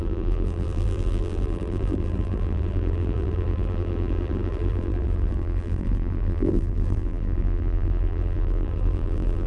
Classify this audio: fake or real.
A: fake